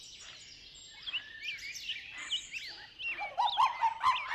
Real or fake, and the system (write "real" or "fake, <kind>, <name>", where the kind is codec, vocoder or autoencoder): real